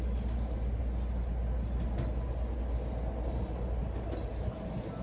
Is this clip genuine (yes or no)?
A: yes